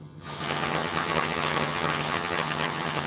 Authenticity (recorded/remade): remade